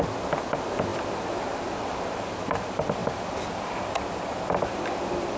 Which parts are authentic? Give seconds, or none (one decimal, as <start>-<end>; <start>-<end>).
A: 0.0-5.4